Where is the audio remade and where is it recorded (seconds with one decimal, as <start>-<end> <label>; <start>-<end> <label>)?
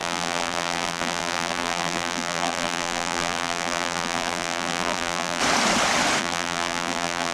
0.0-5.4 remade; 5.4-6.2 recorded; 6.2-7.3 remade